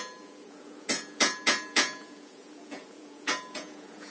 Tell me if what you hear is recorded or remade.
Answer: remade